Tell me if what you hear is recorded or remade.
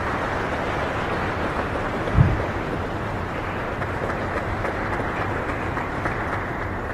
remade